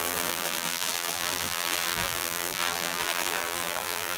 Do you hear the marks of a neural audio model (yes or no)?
yes